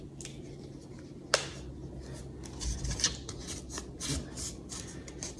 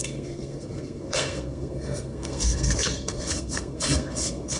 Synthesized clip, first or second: second